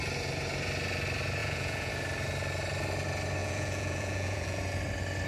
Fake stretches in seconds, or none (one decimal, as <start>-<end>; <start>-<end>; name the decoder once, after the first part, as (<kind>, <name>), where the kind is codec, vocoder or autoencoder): 1.4-1.9 (vocoder, Vocos); 3.4-4.6